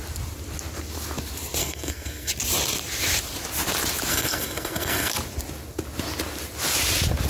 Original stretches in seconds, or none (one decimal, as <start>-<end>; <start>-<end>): 0.0-1.6; 2.3-4.1; 5.1-7.3